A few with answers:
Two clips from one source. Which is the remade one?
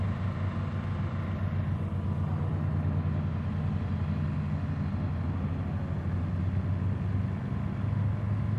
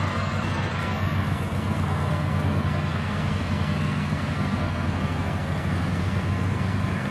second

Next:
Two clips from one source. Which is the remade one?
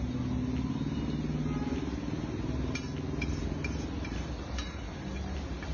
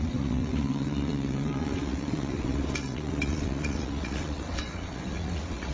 second